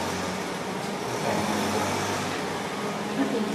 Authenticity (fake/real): fake